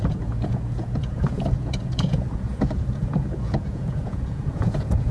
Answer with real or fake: fake